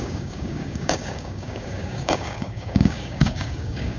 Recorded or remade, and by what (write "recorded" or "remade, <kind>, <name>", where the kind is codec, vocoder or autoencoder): remade, codec, DAC